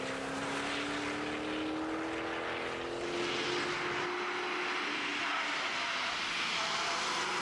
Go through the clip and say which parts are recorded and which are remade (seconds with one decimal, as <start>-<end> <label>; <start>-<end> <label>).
0.0-7.4 recorded